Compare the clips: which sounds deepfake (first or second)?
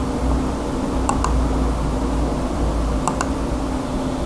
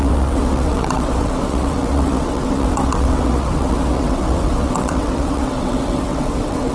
second